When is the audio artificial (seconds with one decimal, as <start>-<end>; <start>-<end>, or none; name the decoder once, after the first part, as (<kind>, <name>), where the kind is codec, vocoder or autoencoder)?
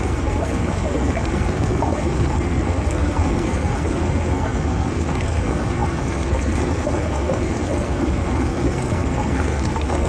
0.0-10.1 (codec, SNAC)